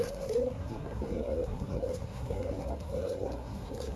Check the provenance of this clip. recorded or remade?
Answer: remade